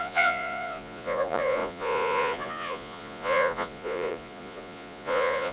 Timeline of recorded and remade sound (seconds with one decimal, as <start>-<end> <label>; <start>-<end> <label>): 0.0-5.5 remade